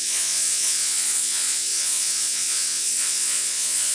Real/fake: fake